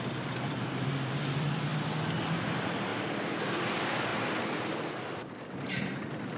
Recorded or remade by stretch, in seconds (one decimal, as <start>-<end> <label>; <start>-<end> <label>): 0.0-1.7 remade; 1.7-2.3 recorded; 2.3-6.4 remade